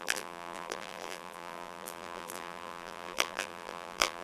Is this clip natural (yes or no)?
no